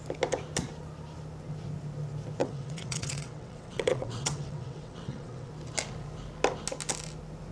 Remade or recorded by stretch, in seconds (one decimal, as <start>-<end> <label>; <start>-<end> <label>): 0.0-2.4 recorded; 2.4-5.5 remade; 5.5-7.5 recorded